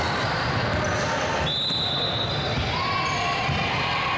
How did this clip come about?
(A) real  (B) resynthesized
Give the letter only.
A